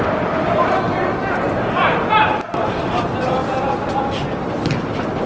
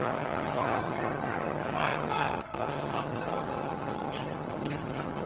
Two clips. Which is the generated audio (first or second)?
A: second